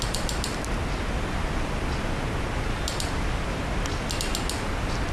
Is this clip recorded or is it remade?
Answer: recorded